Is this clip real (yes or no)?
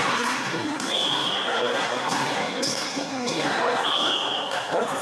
no